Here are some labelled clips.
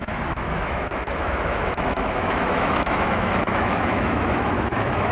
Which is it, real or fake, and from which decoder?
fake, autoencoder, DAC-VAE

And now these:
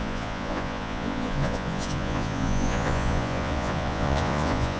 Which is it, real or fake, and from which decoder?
fake, vocoder, Vocos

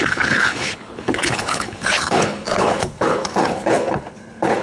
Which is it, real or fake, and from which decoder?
fake, codec, HILCodec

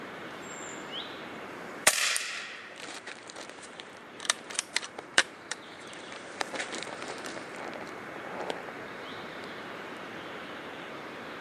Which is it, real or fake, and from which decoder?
fake, vocoder, BigVGAN v2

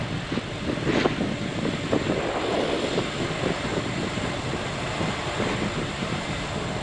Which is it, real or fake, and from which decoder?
real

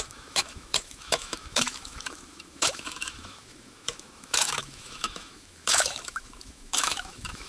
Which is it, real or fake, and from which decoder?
fake, autoencoder, DAC-VAE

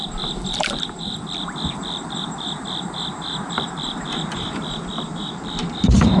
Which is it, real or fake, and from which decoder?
fake, vocoder, BigVGAN v2